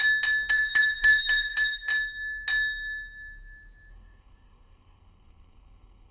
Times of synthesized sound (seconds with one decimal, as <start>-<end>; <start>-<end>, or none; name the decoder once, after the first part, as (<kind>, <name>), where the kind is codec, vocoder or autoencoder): 0.5-1.9 (codec, SNAC); 3.9-6.1

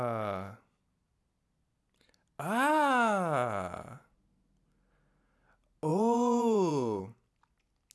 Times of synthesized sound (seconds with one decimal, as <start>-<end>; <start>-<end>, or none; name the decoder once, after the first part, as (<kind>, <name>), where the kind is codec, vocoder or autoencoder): 5.9-7.0 (vocoder, Vocos)

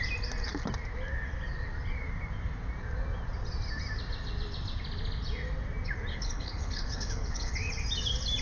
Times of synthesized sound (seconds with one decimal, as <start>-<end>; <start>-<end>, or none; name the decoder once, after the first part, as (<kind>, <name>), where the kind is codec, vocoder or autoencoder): 6.1-7.5 (codec, HILCodec)

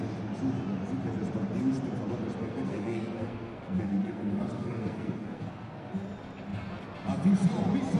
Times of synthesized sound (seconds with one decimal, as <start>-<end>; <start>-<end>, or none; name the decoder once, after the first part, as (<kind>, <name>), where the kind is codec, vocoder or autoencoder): 2.4-5.9 (codec, SNAC)

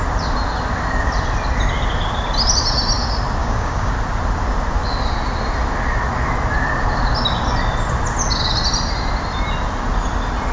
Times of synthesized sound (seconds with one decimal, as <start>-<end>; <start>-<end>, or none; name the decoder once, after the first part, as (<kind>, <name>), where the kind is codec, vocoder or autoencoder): 3.4-3.9 (codec, DAC)